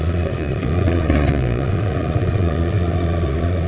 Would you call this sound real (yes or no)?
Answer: no